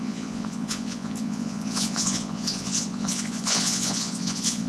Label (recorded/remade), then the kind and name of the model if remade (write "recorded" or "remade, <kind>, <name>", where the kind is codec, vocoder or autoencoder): remade, vocoder, Vocos